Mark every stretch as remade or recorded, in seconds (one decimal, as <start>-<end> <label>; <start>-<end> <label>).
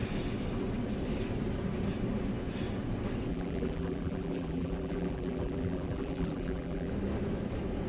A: 0.0-3.3 recorded; 3.3-6.9 remade; 6.9-7.9 recorded